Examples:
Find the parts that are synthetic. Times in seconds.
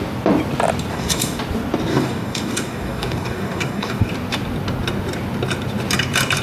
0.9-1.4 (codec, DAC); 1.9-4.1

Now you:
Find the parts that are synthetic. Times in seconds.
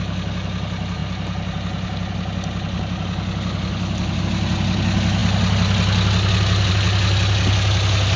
none